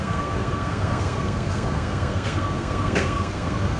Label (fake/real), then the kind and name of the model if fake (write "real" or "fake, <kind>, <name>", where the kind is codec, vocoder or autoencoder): fake, codec, SNAC